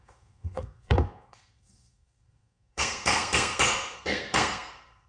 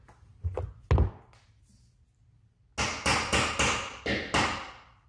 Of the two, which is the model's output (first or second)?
first